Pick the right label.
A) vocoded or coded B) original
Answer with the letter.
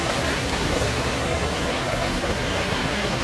A